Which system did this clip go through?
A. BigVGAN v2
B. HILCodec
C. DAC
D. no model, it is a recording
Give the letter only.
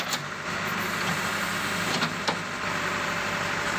D